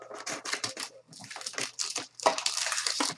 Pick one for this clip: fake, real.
real